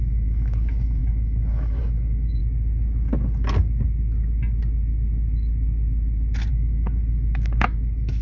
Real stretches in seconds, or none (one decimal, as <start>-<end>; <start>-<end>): 2.4-6.5